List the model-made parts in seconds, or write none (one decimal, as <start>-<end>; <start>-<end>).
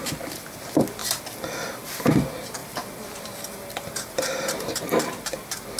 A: 1.0-2.1; 2.6-4.8